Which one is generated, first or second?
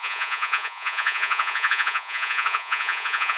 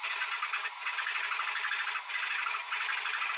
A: first